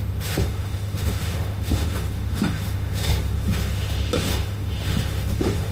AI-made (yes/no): yes